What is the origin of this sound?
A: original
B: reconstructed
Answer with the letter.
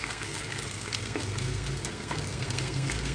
B